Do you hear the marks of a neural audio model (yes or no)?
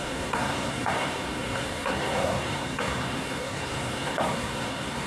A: yes